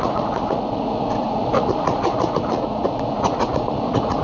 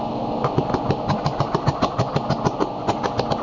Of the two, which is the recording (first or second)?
second